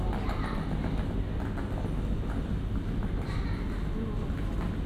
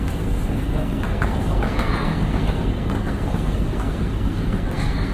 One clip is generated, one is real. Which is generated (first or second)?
second